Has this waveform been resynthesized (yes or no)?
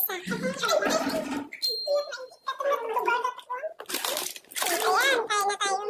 no